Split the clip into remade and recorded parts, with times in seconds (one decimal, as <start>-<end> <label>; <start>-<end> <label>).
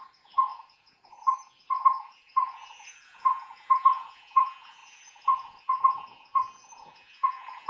0.0-7.7 remade